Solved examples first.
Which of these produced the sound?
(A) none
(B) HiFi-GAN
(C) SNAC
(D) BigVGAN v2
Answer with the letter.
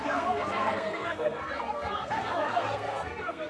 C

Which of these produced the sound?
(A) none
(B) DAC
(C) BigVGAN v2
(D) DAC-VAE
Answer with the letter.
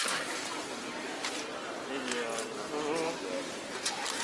C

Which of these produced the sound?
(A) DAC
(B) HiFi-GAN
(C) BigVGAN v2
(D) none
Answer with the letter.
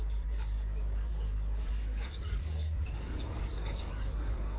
A